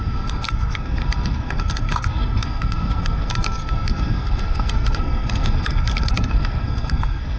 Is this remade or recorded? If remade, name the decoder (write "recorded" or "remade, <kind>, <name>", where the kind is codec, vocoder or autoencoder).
remade, codec, SNAC